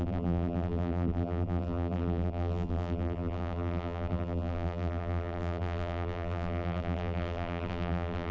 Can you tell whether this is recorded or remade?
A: remade